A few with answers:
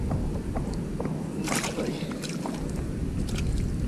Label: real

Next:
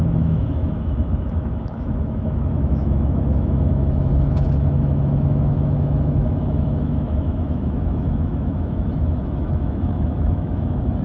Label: fake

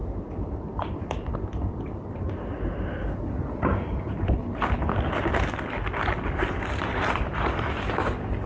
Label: fake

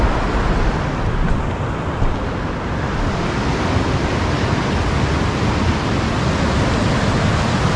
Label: real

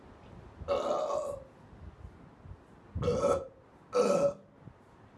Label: real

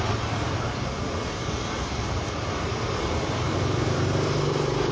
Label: real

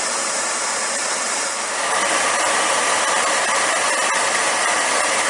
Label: real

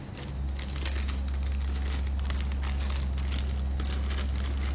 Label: real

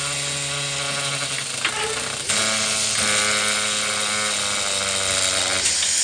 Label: real